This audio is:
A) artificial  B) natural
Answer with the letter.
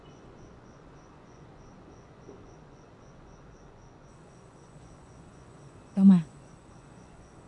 A